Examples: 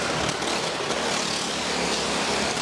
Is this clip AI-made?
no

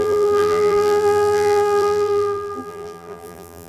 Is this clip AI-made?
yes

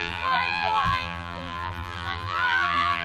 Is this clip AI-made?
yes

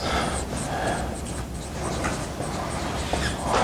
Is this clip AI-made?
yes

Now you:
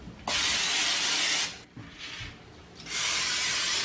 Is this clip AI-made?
no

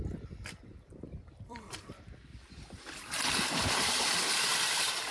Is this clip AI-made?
yes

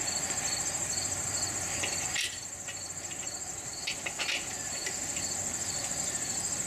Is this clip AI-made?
no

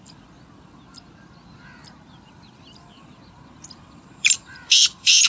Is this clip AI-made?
yes